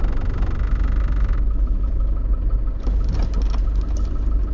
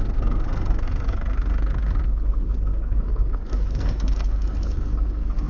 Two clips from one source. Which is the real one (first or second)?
first